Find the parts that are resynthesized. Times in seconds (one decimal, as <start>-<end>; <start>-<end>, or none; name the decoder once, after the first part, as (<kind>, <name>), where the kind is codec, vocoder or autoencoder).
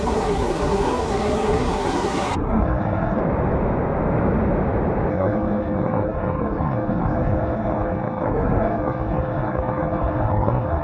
0.0-3.2 (codec, SNAC); 5.1-10.8